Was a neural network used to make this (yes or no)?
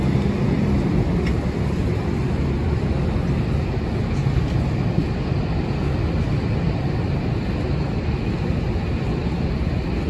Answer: no